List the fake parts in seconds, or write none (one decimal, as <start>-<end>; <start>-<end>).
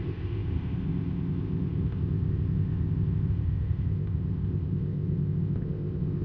0.0-6.2